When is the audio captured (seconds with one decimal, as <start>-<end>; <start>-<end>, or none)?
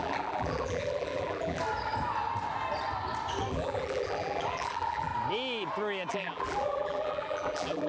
1.6-3.5; 5.1-6.1